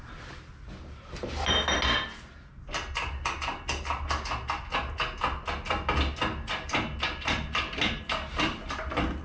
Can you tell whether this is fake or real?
real